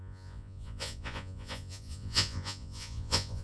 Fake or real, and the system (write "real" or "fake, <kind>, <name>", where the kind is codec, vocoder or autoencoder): fake, vocoder, Vocos